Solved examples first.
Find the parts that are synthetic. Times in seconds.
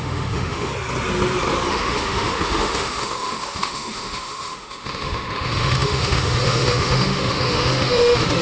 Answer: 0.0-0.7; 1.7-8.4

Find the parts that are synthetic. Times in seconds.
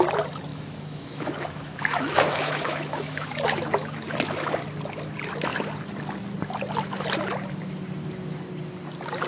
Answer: 0.5-4.5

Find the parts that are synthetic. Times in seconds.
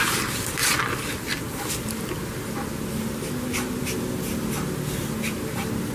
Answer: none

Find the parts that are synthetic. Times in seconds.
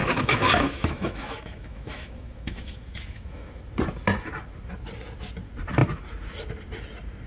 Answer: 0.0-3.6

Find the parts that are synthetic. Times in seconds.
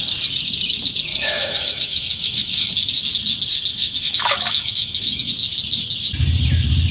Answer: 1.1-2.7; 3.7-5.3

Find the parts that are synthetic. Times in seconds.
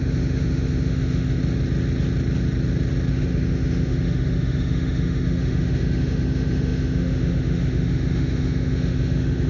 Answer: 0.0-1.4; 3.1-9.5